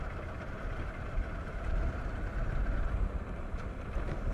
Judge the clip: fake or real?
real